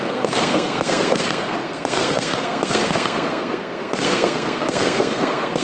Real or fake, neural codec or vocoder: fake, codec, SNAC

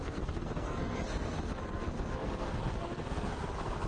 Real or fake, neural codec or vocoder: fake, codec, SNAC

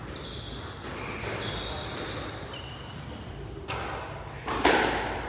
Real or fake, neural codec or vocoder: real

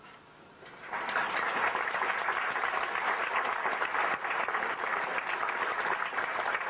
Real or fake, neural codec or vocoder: real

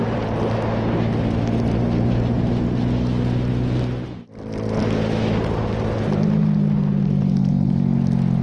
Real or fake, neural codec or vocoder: real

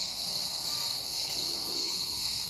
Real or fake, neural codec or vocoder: fake, codec, SNAC